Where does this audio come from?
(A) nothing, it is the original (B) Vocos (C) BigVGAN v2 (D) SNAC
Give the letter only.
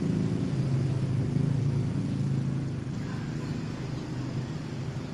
A